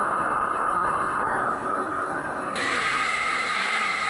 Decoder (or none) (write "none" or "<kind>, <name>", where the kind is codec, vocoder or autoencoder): codec, SNAC